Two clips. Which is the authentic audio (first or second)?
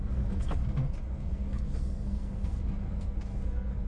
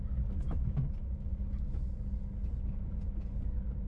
second